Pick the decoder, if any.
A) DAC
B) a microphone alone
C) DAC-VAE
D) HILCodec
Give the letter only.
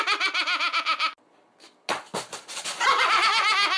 B